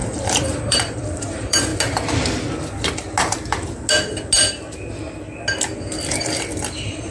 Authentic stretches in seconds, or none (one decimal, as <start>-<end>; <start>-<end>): 1.7-5.8